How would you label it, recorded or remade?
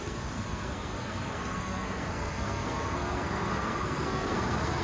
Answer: remade